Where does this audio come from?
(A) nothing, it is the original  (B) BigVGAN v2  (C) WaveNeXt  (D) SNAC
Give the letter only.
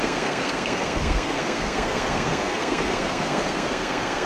D